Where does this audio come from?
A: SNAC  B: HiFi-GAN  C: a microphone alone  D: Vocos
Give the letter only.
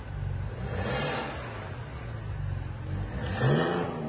C